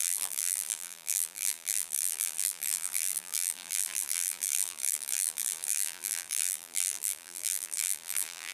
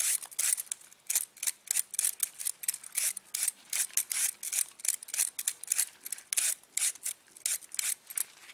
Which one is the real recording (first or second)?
second